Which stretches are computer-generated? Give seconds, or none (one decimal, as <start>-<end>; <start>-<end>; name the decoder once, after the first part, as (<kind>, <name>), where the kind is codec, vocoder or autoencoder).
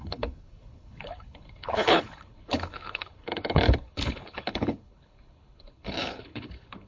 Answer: 0.0-6.9 (codec, HILCodec)